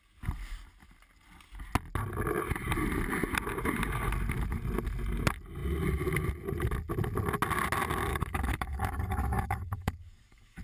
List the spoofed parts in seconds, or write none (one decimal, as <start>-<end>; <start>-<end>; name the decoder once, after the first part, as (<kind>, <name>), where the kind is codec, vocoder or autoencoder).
8.1-10.6 (codec, DAC)